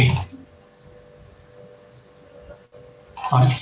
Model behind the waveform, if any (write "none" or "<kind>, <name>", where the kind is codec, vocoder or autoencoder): none